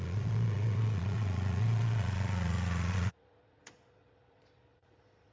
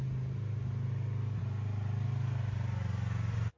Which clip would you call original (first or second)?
second